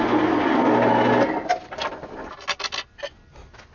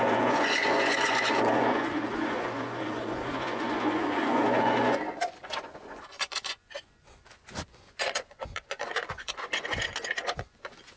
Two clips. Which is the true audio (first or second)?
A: first